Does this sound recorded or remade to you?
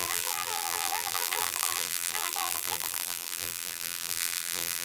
remade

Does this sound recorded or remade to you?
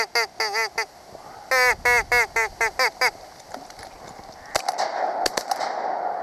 recorded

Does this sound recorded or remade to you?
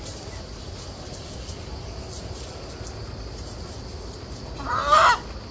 recorded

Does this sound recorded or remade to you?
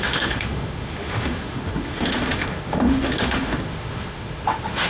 remade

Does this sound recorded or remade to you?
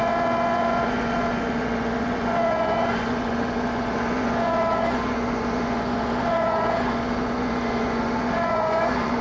remade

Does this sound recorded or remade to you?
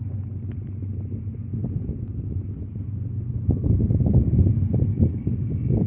recorded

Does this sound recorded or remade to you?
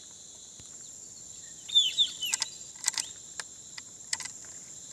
recorded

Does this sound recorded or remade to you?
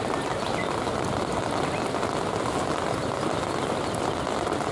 recorded